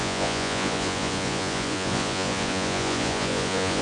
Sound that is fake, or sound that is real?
fake